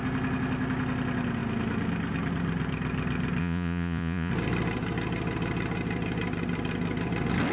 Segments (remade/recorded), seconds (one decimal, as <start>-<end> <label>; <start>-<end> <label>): 0.0-3.4 recorded; 3.4-4.3 remade; 4.3-7.5 recorded